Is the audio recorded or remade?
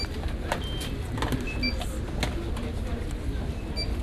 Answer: recorded